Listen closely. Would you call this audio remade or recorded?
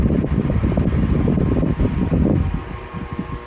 remade